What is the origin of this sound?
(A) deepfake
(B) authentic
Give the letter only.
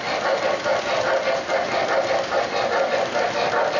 B